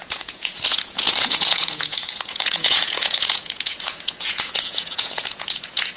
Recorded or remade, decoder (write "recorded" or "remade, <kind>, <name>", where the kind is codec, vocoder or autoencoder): remade, vocoder, Vocos